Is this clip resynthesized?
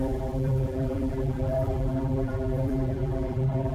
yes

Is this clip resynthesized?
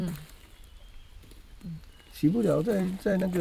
yes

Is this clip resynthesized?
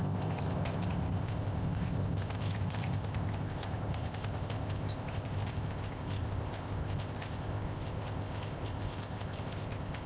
yes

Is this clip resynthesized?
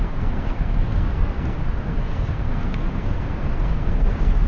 yes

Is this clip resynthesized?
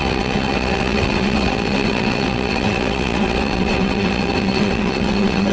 yes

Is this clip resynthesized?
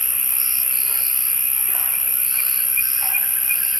no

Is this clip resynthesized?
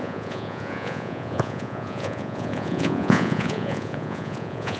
yes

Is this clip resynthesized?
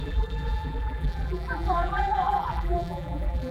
yes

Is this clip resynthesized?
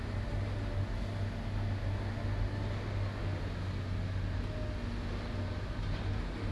no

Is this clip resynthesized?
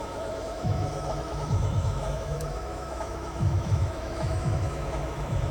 yes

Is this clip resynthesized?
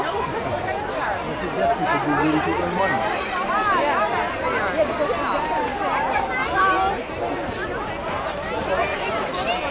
no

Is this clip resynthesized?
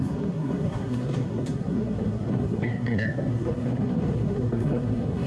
yes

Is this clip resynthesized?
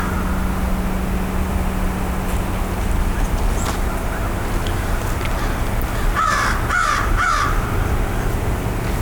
no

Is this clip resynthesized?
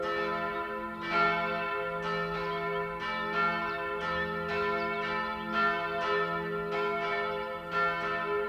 no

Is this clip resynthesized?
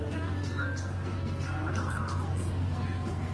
yes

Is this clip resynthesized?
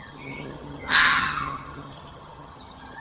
yes